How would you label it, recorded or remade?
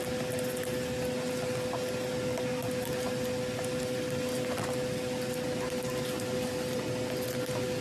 recorded